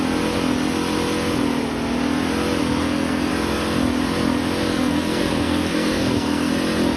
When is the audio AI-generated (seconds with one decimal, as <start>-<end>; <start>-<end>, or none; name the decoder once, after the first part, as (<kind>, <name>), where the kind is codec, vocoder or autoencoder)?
2.6-3.3 (codec, SNAC); 4.7-6.5